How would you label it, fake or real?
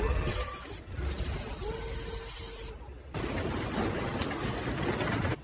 real